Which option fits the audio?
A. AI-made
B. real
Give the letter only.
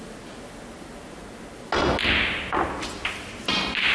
B